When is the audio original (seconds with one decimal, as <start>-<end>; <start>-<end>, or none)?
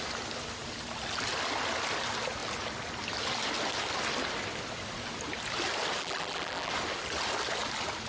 0.0-6.0; 6.7-8.1